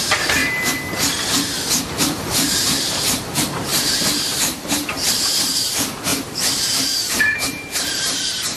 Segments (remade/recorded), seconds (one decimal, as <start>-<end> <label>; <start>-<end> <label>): 0.0-0.4 remade; 0.4-1.8 recorded; 1.8-8.6 remade